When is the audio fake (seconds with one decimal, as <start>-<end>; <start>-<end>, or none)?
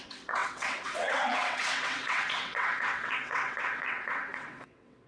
0.0-5.1